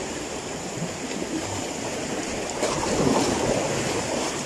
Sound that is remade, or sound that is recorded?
remade